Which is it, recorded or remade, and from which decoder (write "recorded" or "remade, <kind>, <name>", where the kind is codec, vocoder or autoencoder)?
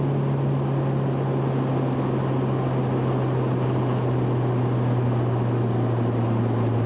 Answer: recorded